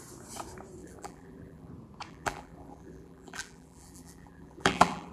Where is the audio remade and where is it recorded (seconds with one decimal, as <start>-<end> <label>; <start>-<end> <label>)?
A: 0.0-0.8 recorded; 0.8-1.7 remade; 1.7-2.1 recorded; 2.1-5.1 remade